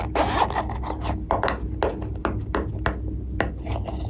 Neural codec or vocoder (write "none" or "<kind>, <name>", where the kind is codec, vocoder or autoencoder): none